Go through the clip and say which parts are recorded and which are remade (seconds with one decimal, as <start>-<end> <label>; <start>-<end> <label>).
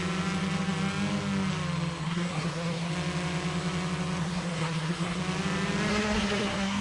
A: 0.0-2.0 recorded; 2.0-2.9 remade; 2.9-4.2 recorded; 4.2-5.2 remade; 5.2-5.9 recorded; 5.9-6.8 remade